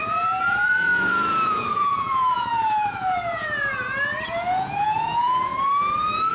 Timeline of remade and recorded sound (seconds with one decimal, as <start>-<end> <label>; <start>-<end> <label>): 0.0-5.5 remade; 5.5-6.3 recorded

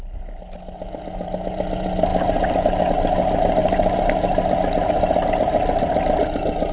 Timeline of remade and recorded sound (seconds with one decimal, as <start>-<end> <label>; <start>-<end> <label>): 0.0-6.7 recorded

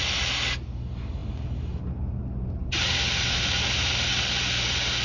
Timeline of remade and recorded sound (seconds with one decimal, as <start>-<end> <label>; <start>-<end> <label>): 0.0-2.6 recorded; 2.6-4.1 remade; 4.1-5.0 recorded